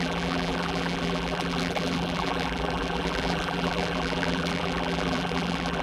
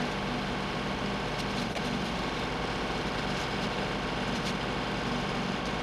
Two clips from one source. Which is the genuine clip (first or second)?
second